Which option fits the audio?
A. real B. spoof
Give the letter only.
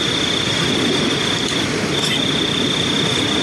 A